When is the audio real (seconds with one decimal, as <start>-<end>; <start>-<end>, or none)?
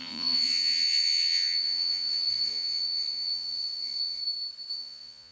4.2-4.7